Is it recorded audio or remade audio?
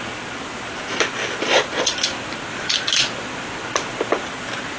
recorded